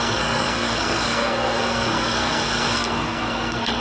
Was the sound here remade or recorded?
remade